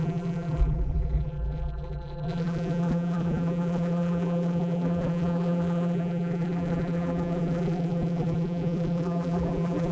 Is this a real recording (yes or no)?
no